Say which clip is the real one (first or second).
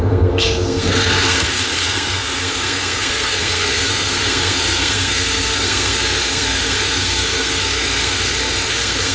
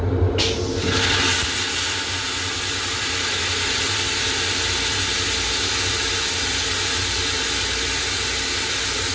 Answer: second